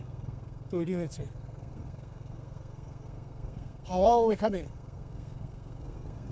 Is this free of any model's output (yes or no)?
no